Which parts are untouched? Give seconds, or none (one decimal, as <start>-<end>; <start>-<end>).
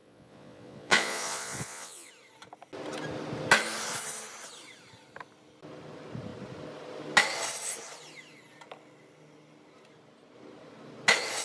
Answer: 2.1-11.4